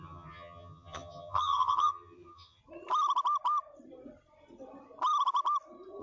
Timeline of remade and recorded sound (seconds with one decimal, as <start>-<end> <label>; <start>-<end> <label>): 0.0-2.6 remade; 2.6-6.0 recorded